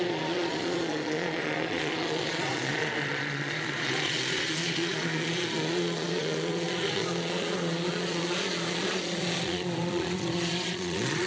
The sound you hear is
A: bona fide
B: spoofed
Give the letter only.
B